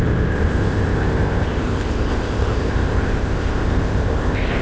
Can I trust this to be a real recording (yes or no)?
no